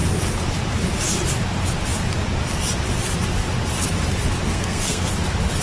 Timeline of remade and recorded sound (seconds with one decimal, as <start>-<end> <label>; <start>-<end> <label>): 0.0-4.5 recorded; 4.5-5.1 remade; 5.1-5.6 recorded